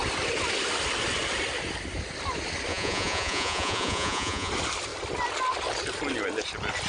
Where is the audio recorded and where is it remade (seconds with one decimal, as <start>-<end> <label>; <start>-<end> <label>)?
0.0-2.7 recorded; 2.7-4.5 remade; 4.5-6.9 recorded